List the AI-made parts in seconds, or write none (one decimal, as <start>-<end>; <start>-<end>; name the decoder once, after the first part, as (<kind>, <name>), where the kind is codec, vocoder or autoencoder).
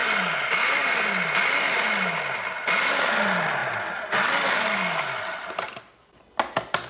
none